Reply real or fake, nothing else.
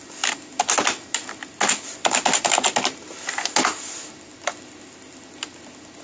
real